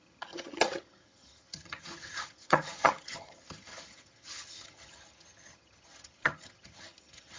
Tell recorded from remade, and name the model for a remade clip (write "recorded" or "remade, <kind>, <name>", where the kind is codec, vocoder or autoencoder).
remade, vocoder, HiFi-GAN